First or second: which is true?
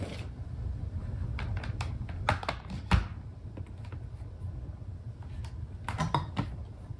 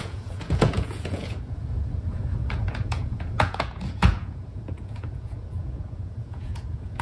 first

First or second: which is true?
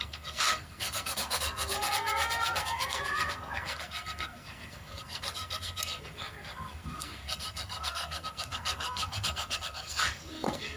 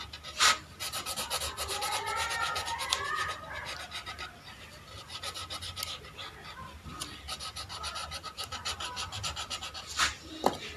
second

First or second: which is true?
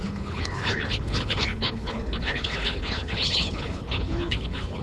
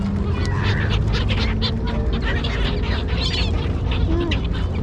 second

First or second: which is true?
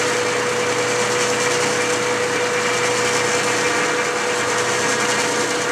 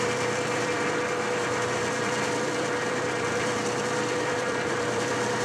first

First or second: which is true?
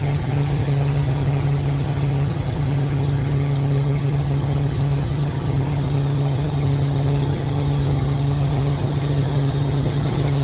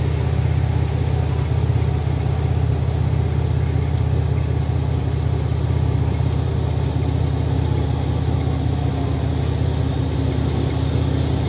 second